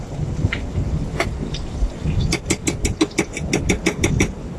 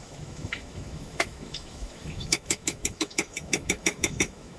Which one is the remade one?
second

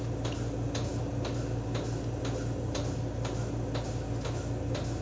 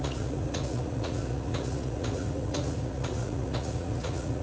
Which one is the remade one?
second